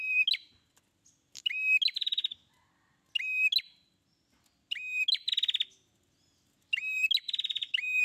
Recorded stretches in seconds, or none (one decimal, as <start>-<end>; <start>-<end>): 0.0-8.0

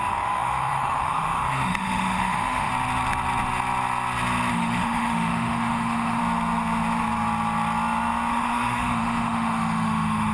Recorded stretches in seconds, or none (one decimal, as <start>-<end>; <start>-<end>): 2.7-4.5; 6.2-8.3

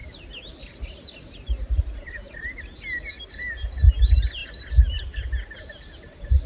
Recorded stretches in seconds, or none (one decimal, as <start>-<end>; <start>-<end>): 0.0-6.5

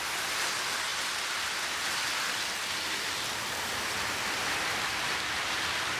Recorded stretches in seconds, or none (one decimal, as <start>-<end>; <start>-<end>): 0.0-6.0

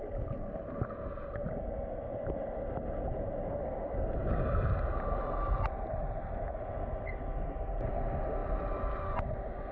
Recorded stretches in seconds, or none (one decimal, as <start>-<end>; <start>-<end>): 0.0-9.7

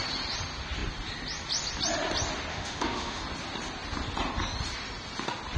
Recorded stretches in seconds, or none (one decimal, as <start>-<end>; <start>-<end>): 0.0-2.5; 3.2-5.6

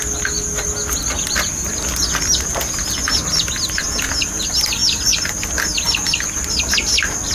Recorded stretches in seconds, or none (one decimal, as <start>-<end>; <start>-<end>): 0.0-7.3

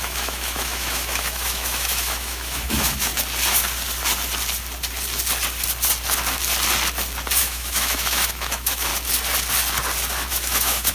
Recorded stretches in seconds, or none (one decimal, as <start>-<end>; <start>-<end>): 3.1-7.4; 8.9-10.3